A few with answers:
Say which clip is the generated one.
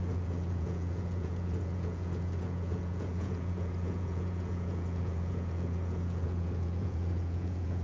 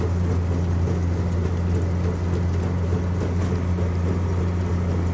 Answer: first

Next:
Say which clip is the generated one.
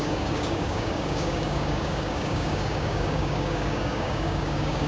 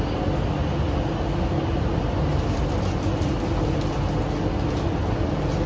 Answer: first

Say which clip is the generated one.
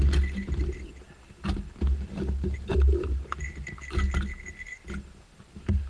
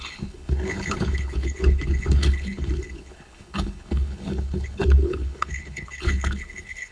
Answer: second